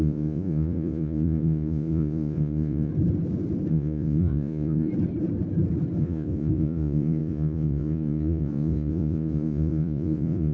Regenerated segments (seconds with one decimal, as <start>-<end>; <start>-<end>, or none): 0.0-2.9; 3.7-4.9; 6.0-10.5